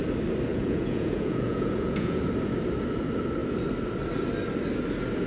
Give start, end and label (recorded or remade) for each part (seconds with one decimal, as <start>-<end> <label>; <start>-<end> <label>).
0.0-0.5 recorded; 0.5-2.2 remade; 2.2-5.3 recorded